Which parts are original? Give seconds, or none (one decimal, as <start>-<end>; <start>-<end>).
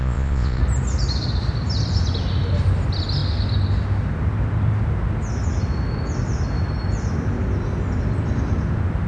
0.6-9.1